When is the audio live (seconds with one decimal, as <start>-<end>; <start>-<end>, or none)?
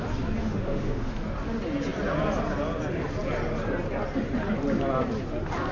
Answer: 0.0-0.4; 1.1-5.7